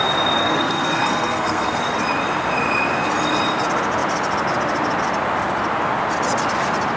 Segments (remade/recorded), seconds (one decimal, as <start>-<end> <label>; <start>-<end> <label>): 0.0-0.4 recorded; 0.4-1.8 remade; 1.8-7.0 recorded